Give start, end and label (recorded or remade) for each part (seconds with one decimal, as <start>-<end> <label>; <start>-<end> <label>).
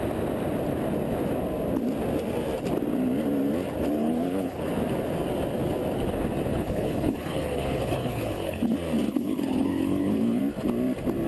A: 0.0-4.0 recorded; 4.0-4.7 remade; 4.7-6.5 recorded; 6.5-8.6 remade; 8.6-9.1 recorded; 9.1-10.4 remade; 10.4-11.3 recorded